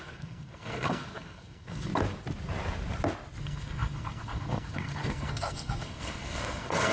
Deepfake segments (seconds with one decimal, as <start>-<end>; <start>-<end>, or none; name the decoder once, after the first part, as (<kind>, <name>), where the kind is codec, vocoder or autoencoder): 0.0-1.9 (codec, SNAC); 3.4-6.9